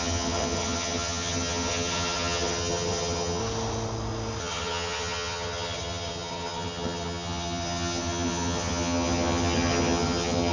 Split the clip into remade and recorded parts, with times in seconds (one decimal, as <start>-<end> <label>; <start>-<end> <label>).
0.0-3.4 remade; 3.4-4.4 recorded; 4.4-10.5 remade